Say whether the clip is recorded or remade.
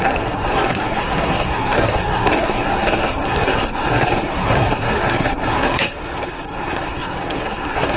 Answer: remade